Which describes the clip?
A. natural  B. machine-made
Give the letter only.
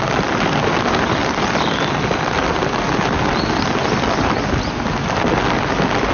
A